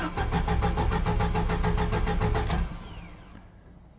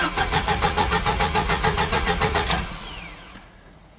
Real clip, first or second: first